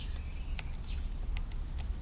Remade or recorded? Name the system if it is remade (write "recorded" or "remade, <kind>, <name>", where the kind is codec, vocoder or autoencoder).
recorded